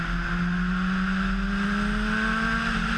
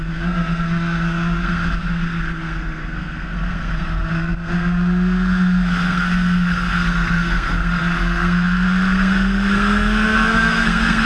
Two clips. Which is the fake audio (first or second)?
second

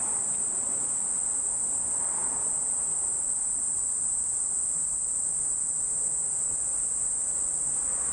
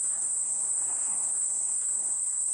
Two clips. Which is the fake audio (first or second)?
second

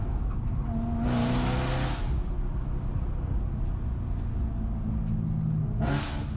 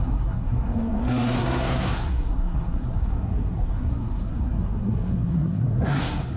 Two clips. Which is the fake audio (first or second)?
second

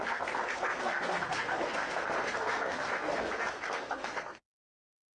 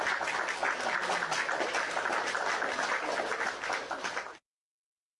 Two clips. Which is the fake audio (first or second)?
first